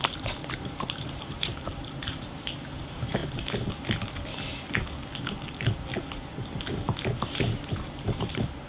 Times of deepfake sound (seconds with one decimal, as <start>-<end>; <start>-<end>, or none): 0.0-1.5; 2.0-3.2; 7.7-8.7